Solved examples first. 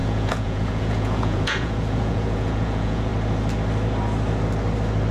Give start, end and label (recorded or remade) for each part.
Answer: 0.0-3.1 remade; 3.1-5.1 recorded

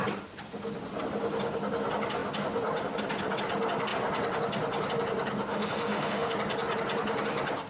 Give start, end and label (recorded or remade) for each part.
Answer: 0.0-5.5 recorded; 5.5-6.3 remade; 6.3-7.7 recorded

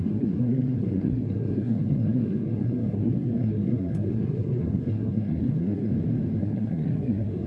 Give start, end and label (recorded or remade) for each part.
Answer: 0.0-5.9 remade; 5.9-6.4 recorded; 6.4-7.5 remade

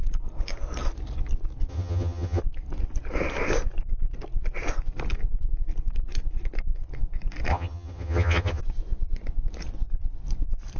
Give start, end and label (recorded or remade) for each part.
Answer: 0.0-1.7 recorded; 1.7-2.4 remade; 2.4-7.5 recorded; 7.5-8.6 remade; 8.6-10.8 recorded

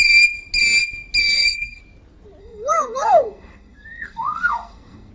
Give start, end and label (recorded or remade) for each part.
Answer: 0.0-1.2 recorded; 1.2-1.8 remade; 1.8-2.4 recorded; 2.4-5.1 remade

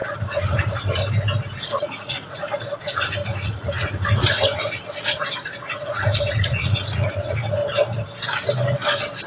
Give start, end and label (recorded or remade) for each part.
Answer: 0.0-1.0 remade; 1.0-1.7 recorded; 1.7-7.6 remade; 7.6-9.3 recorded

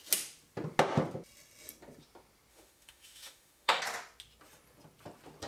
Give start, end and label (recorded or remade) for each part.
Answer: 0.0-2.5 recorded; 2.5-3.8 remade; 3.8-5.5 recorded

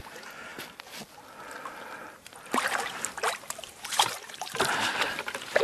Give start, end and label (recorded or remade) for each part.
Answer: 0.0-2.0 recorded; 2.0-5.6 remade